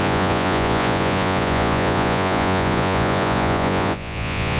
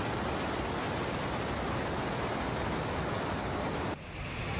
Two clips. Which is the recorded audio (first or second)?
second